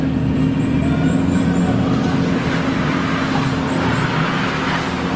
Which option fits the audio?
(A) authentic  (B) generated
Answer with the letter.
A